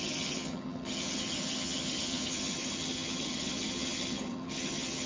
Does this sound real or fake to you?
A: fake